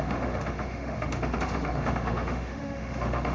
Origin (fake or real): fake